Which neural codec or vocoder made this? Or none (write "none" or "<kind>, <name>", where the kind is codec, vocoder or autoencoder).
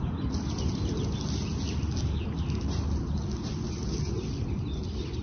none